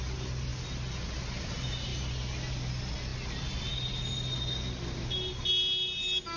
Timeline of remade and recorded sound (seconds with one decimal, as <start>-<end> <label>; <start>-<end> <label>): 0.0-6.4 recorded